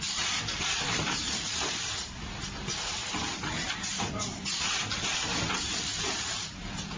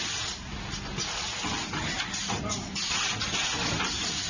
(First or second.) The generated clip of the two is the first